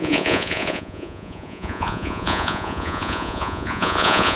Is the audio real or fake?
fake